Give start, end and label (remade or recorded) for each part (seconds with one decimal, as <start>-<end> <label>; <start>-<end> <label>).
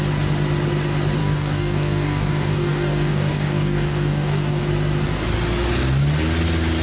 0.0-1.2 recorded; 1.2-4.6 remade; 4.6-6.8 recorded